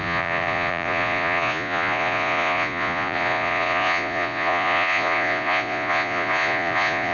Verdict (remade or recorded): remade